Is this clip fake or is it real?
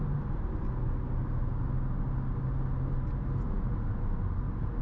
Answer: real